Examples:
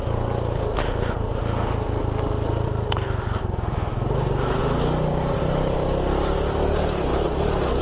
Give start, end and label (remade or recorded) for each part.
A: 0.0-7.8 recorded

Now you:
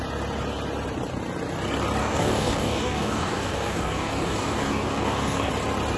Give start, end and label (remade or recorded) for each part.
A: 0.0-2.0 recorded; 2.0-5.5 remade; 5.5-6.0 recorded

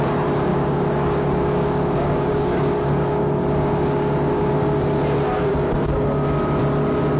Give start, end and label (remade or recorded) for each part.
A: 0.0-0.5 recorded; 0.5-4.8 remade; 4.8-7.2 recorded

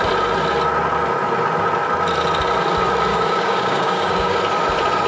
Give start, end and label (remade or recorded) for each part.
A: 0.0-3.1 recorded; 3.1-4.4 remade; 4.4-5.1 recorded

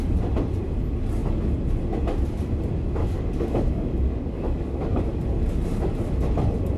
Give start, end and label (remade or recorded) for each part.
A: 0.0-3.0 recorded; 3.0-5.0 remade; 5.0-6.8 recorded

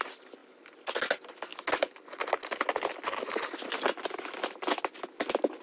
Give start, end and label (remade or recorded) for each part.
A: 0.0-5.6 recorded

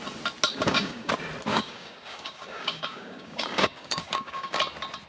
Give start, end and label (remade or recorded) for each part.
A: 0.0-0.5 recorded; 0.5-1.1 remade; 1.1-1.5 recorded; 1.5-4.6 remade; 4.6-5.1 recorded